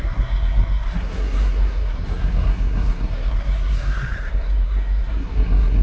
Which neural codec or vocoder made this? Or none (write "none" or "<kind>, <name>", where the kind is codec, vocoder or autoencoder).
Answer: codec, SNAC